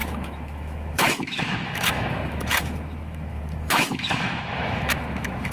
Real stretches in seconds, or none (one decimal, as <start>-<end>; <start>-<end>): none